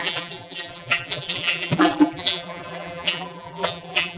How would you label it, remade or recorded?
remade